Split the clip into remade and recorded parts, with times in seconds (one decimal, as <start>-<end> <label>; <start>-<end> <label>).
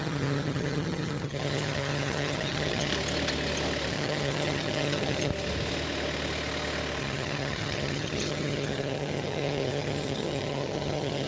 0.0-2.9 remade; 2.9-3.9 recorded; 3.9-5.3 remade; 5.3-7.0 recorded; 7.0-11.3 remade